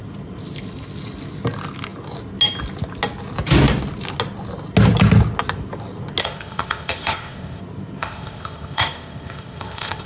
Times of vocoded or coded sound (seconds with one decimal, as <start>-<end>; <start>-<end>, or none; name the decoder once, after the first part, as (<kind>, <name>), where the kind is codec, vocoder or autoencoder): 6.2-7.6 (codec, ZipCodec); 8.0-10.1